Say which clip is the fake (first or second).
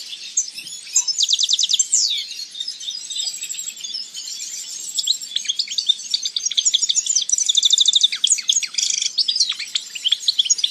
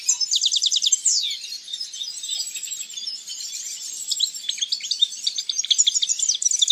second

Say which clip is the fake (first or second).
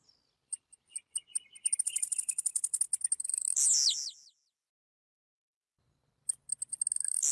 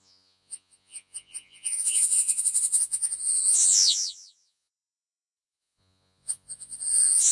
second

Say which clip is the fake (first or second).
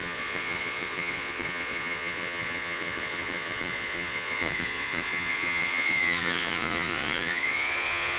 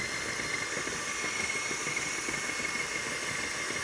first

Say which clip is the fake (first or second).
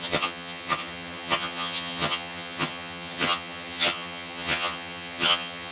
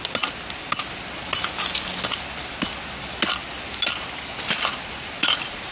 first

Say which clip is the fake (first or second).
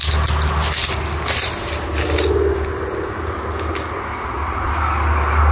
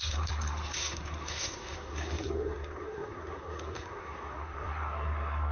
second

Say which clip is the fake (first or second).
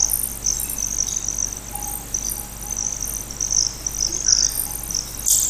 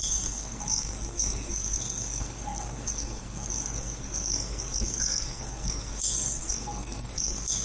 second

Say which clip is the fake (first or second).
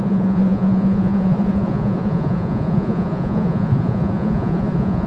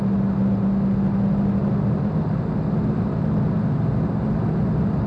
first